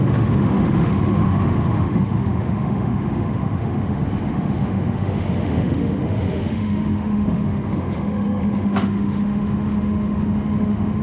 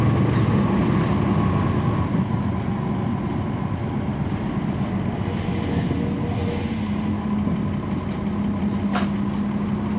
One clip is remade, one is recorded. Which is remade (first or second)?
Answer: first